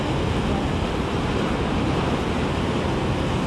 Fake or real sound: real